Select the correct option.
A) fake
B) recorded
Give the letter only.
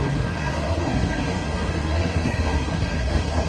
A